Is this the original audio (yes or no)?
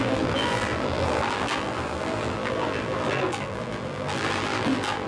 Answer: no